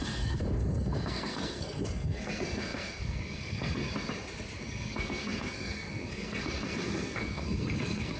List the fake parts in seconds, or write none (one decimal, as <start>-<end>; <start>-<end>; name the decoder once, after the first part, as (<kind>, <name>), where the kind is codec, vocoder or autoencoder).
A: 0.0-3.8 (codec, SNAC); 4.6-8.2